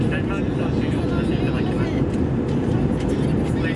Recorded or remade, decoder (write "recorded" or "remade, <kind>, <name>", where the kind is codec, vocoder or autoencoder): recorded